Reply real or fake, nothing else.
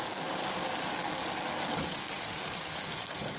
fake